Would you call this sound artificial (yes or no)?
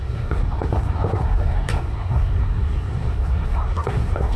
yes